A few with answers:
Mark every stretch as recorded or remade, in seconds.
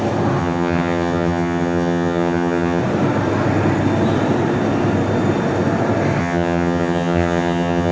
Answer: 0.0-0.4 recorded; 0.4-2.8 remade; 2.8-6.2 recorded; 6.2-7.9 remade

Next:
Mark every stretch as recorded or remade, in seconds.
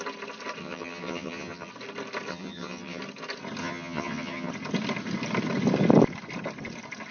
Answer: 0.0-0.6 recorded; 0.6-1.7 remade; 1.7-2.3 recorded; 2.3-3.0 remade; 3.0-3.6 recorded; 3.6-4.5 remade; 4.5-7.1 recorded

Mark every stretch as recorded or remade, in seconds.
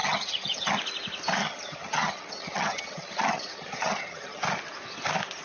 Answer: 0.0-0.7 remade; 0.7-1.4 recorded; 1.4-4.4 remade; 4.4-5.4 recorded